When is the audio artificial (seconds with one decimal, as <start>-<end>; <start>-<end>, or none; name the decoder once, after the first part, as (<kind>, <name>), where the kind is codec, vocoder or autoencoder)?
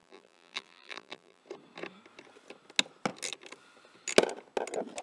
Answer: 0.0-1.4 (vocoder, BigVGAN v2)